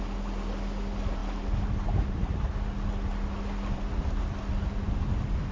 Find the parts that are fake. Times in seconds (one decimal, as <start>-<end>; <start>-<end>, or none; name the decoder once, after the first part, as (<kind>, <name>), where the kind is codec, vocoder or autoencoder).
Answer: none